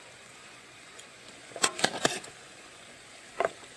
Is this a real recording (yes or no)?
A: no